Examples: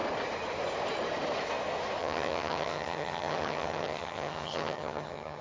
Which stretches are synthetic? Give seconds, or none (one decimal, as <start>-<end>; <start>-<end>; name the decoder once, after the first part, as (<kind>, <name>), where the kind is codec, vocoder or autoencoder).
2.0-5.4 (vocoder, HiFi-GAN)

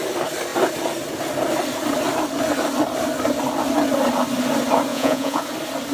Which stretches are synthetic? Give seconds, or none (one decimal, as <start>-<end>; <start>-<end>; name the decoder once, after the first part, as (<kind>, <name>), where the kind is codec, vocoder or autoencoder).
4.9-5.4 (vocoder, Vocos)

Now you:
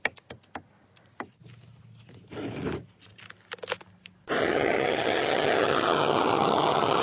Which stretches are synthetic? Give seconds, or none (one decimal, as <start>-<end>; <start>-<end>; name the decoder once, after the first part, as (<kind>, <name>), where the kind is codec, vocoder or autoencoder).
4.4-7.0 (vocoder, HiFi-GAN)